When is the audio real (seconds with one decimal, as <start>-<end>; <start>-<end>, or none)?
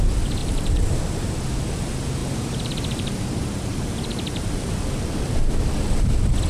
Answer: 0.0-0.4; 1.4-2.2; 6.1-6.5